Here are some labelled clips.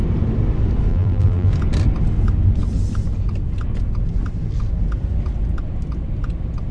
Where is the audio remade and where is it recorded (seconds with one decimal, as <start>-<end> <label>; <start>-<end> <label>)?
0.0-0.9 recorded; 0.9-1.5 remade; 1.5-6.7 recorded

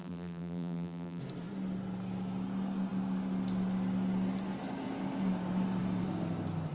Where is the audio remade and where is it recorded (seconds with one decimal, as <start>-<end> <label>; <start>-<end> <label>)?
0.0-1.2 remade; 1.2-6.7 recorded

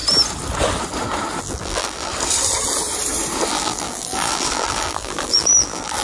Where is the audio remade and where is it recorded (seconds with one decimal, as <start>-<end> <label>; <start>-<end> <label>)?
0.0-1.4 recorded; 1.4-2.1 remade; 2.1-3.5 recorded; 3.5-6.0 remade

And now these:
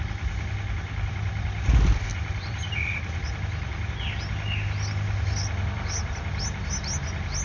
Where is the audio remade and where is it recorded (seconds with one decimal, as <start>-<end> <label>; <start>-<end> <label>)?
0.0-2.1 recorded; 2.1-3.9 remade; 3.9-5.4 recorded; 5.4-6.1 remade; 6.1-7.4 recorded